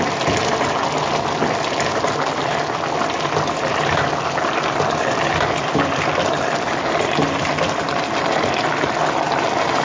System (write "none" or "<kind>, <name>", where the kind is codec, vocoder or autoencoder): none